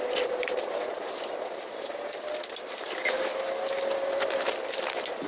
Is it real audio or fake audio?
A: real